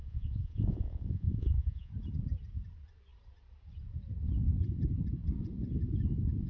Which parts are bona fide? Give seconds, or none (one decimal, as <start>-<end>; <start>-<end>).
1.9-6.5